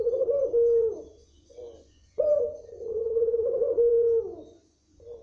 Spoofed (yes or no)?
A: yes